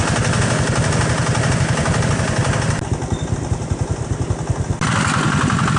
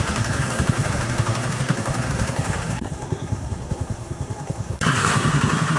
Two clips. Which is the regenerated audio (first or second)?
second